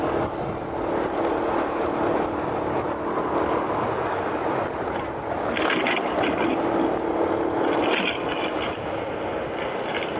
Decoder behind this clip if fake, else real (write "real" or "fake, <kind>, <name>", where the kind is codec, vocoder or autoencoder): real